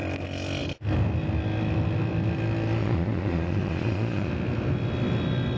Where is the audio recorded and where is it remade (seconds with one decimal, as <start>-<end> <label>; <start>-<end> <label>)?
0.0-2.8 recorded; 2.8-4.3 remade; 4.3-5.6 recorded